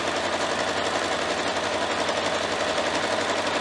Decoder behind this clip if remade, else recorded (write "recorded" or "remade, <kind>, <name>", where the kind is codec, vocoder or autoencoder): recorded